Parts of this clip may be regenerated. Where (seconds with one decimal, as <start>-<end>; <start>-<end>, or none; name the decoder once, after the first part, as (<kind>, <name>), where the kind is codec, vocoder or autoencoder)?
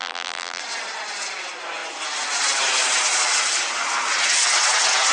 0.0-0.6 (vocoder, BigVGAN v2)